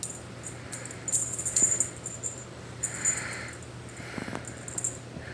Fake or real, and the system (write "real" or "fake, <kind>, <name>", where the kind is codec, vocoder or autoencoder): real